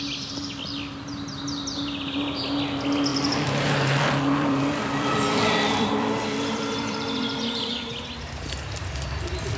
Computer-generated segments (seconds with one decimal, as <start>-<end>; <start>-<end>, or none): 3.1-7.7